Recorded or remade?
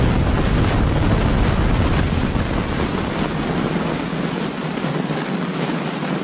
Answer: recorded